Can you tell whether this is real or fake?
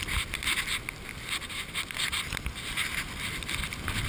real